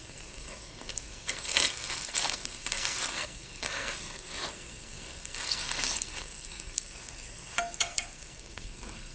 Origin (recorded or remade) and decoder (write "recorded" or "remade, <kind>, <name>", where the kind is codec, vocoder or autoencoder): remade, codec, SNAC